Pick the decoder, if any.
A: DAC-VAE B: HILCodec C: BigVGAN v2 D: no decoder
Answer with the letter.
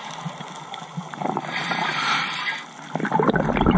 D